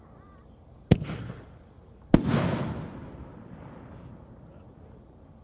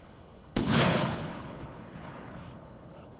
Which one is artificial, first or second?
second